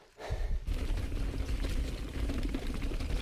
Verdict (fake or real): real